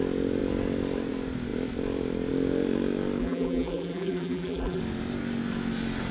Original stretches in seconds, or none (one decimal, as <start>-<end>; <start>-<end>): 0.0-3.2; 4.8-6.1